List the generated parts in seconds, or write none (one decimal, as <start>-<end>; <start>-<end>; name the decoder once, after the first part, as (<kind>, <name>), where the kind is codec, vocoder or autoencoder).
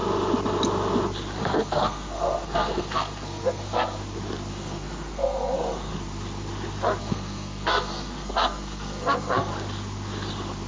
1.4-4.0 (codec, SNAC); 4.5-5.9; 7.0-9.5